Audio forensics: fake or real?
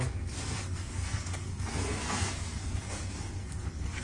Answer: fake